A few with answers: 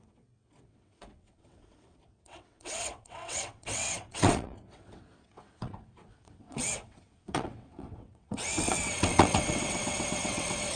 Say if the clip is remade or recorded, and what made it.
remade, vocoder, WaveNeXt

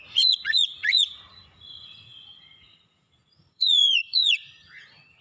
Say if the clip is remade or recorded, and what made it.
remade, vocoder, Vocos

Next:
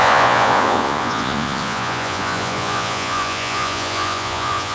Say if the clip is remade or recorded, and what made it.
remade, vocoder, Vocos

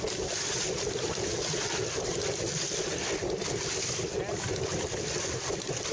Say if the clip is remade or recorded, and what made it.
recorded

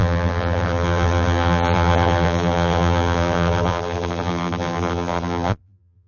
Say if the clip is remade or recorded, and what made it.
remade, vocoder, BigVGAN v2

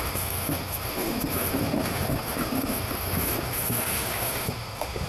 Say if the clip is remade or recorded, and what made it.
remade, autoencoder, DAC-VAE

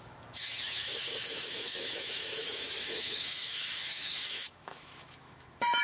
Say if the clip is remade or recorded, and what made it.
remade, autoencoder, DAC-VAE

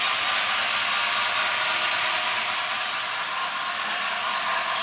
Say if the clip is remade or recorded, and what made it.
recorded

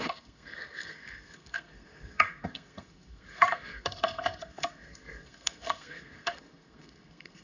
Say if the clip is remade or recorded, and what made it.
remade, codec, SNAC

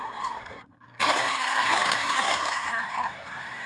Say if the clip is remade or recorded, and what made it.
remade, codec, SNAC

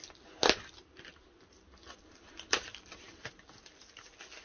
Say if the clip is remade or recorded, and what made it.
recorded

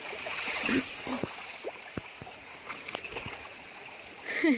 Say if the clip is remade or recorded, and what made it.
remade, vocoder, Vocos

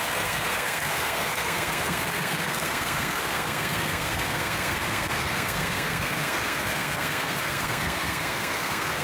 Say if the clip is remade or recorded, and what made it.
remade, codec, SNAC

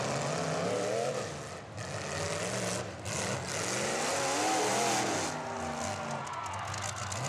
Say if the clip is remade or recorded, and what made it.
recorded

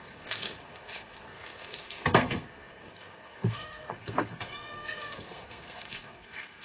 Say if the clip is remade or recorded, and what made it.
remade, codec, SNAC